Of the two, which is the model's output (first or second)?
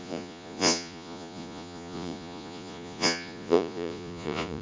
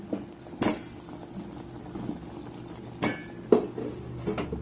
first